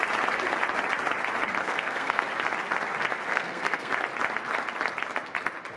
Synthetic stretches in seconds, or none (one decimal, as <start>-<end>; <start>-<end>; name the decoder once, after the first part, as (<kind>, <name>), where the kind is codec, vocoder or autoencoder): 1.6-2.2 (codec, SNAC); 3.3-3.9